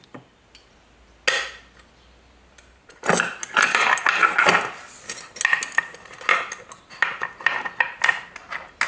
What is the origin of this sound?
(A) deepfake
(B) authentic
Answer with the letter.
B